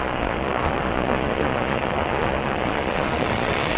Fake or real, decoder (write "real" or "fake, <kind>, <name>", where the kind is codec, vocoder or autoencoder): fake, vocoder, Vocos